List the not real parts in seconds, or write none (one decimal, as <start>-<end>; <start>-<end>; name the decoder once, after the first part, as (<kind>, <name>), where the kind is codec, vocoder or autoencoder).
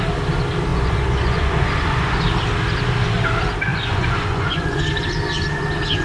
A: 0.7-2.2 (vocoder, Vocos); 3.7-4.8